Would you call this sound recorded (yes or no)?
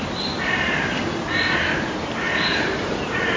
yes